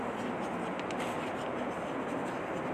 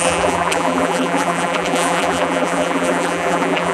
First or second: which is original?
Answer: first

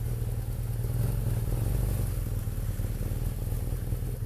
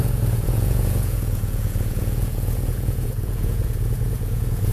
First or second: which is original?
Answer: first